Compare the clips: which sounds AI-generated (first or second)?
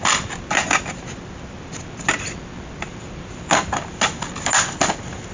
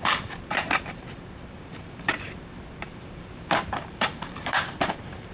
second